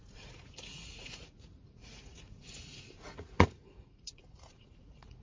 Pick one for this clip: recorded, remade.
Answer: remade